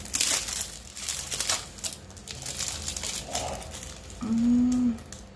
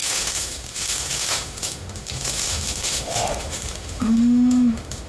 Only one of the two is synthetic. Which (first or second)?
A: second